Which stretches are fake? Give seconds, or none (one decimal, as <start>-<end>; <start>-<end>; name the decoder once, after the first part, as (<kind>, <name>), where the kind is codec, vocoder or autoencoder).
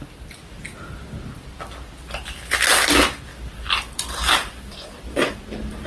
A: 3.3-5.4 (vocoder, BigVGAN v2)